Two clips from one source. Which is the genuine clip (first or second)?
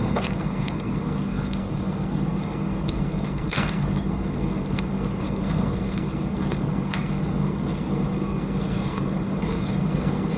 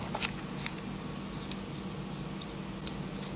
second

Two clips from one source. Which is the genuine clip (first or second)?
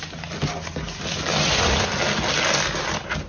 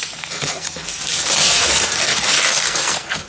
first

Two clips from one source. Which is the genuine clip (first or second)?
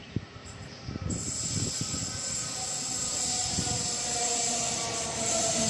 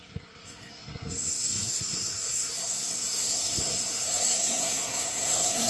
first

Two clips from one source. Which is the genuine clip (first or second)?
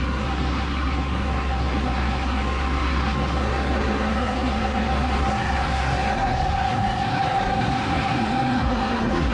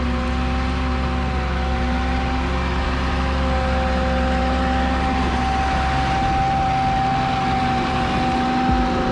second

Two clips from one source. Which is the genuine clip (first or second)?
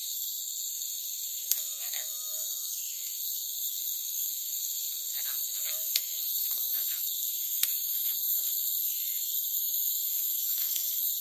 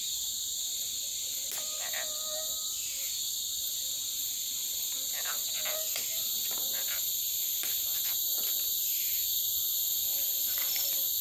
second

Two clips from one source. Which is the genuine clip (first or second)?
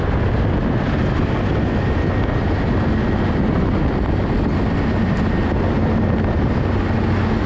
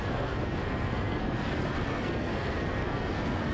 first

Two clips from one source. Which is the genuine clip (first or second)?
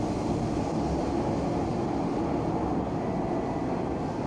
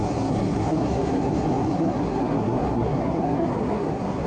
first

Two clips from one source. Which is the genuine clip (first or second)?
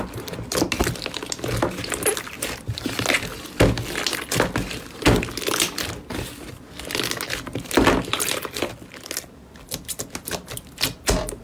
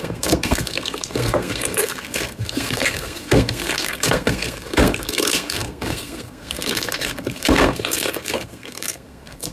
first